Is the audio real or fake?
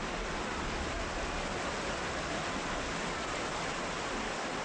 real